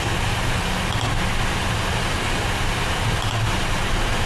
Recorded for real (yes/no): yes